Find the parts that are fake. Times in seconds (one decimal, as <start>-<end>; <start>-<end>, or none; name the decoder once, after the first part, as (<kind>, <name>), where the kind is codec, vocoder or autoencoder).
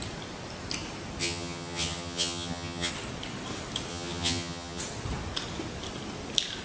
1.2-2.9 (vocoder, HiFi-GAN); 3.9-4.8